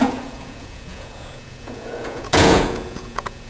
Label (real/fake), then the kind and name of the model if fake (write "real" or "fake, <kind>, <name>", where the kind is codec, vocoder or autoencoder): fake, vocoder, Vocos